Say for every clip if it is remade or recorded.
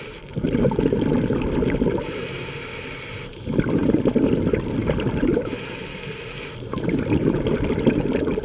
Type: recorded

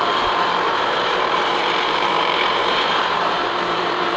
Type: remade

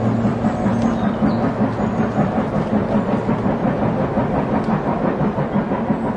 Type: recorded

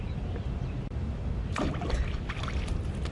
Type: recorded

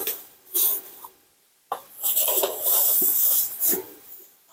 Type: remade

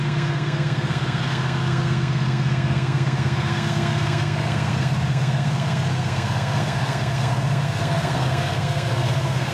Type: remade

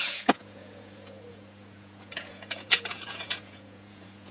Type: remade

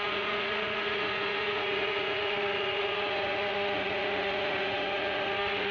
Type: remade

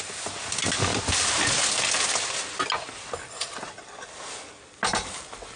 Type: recorded